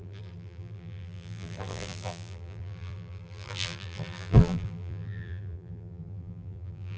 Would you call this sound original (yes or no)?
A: no